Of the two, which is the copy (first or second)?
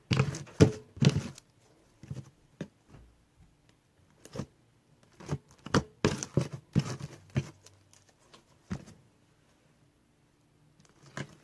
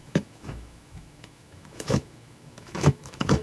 second